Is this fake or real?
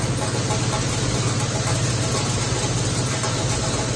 real